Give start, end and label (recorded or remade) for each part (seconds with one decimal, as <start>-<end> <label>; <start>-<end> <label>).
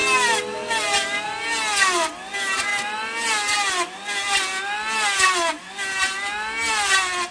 0.0-7.3 recorded